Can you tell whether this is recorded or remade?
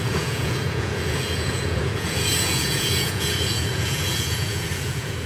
remade